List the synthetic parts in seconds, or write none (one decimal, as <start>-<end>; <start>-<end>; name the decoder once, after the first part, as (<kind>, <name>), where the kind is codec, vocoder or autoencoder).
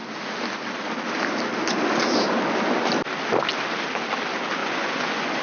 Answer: 4.6-5.4 (vocoder, Vocos)